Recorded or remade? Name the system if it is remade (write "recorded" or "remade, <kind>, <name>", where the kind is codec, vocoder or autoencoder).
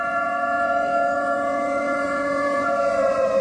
remade, vocoder, Vocos